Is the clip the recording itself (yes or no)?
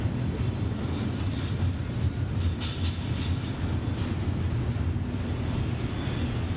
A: yes